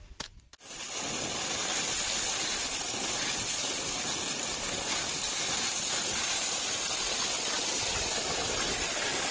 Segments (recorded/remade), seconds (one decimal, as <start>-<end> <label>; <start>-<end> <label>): 0.0-9.3 recorded